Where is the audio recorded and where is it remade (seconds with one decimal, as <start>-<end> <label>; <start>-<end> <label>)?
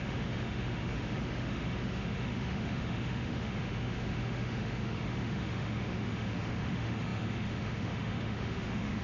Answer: 0.0-9.0 remade